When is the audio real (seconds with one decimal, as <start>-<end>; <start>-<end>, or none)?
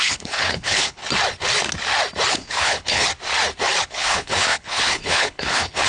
1.0-2.3; 3.1-3.9